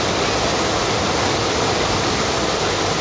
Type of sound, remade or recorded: recorded